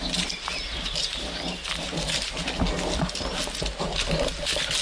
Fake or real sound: real